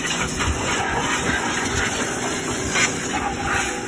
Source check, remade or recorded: remade